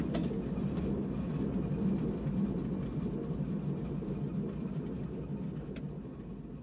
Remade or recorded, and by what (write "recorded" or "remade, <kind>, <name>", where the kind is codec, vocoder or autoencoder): recorded